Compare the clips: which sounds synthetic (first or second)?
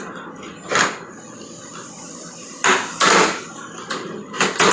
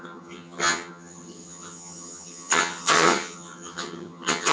second